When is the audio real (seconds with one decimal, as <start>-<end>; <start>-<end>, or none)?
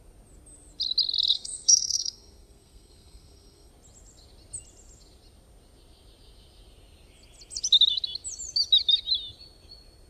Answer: 0.0-1.3; 3.7-10.1